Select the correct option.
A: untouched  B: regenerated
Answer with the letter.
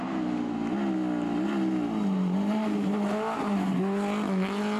A